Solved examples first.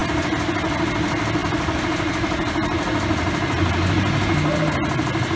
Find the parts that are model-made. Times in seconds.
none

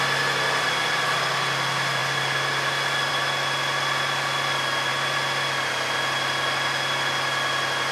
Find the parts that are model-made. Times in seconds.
none

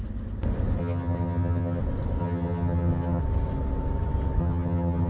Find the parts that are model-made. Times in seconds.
0.8-1.8; 2.2-3.2; 4.4-5.1

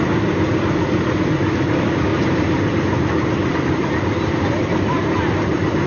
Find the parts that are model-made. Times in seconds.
2.1-5.9

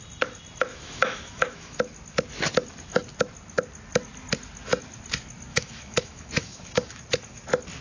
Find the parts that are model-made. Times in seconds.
0.7-1.8; 5.5-7.0